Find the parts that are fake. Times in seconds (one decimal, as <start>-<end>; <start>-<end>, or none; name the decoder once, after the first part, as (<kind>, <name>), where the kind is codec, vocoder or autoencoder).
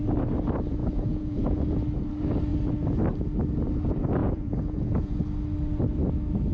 0.8-1.6 (vocoder, Vocos); 4.2-5.2